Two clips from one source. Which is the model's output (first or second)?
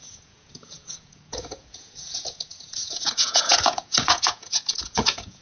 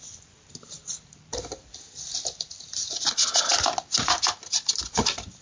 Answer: first